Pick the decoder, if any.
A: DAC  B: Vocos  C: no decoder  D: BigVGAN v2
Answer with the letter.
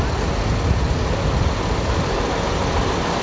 C